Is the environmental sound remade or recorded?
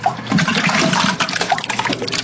remade